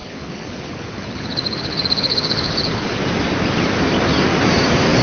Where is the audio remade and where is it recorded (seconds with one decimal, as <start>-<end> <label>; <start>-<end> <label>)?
0.0-3.0 remade; 3.0-5.0 recorded